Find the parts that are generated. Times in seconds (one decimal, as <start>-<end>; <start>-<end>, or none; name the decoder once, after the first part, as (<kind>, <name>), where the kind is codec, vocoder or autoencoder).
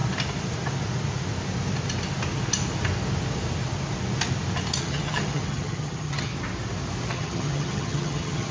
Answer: 4.8-6.3 (vocoder, HiFi-GAN); 7.1-8.5